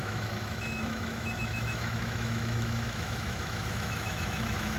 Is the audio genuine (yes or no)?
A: no